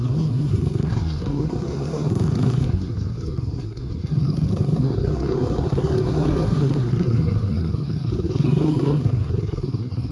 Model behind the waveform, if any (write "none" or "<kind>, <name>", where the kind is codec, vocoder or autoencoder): codec, SNAC